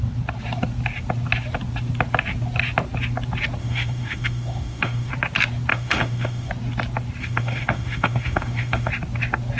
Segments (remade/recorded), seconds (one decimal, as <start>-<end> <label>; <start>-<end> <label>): 0.0-3.6 recorded; 3.6-5.1 remade; 5.1-5.7 recorded; 5.7-6.5 remade; 6.5-7.2 recorded; 7.2-8.9 remade; 8.9-9.6 recorded